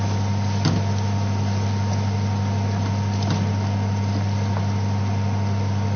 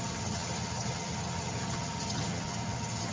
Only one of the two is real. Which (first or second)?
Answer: first